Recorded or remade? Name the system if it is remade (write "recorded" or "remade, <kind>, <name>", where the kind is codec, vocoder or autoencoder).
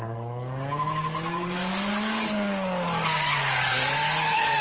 remade, codec, DAC